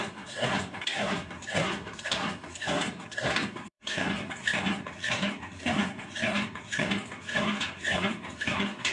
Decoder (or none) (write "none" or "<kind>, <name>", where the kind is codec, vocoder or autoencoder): codec, SNAC